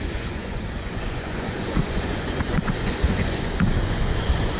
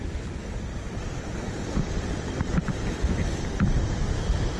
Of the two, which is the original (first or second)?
second